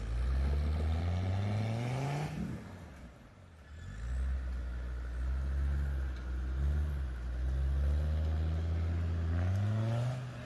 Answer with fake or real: real